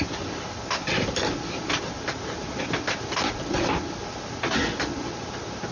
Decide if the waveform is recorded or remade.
recorded